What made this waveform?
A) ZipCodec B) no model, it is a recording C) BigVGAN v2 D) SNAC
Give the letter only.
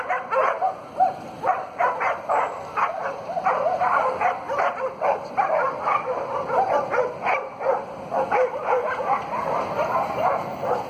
B